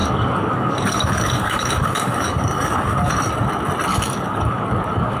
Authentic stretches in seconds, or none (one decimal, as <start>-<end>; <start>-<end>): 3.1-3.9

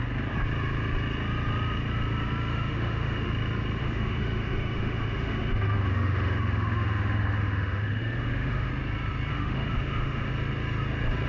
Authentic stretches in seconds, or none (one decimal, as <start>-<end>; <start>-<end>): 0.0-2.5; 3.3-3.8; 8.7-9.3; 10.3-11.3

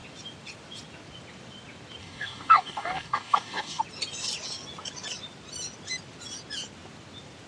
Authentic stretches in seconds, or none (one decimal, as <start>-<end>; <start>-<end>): 0.0-2.0; 3.8-7.5

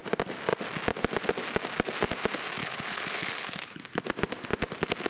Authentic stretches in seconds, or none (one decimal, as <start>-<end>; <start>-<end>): 0.0-2.6; 3.8-5.1

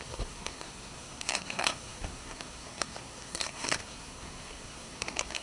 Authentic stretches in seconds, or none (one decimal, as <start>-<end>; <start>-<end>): none